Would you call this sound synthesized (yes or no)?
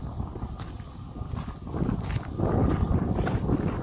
no